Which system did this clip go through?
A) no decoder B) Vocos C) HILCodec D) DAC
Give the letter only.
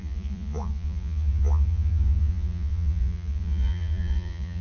B